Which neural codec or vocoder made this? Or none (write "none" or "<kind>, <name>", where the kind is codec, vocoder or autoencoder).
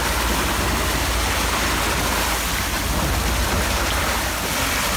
none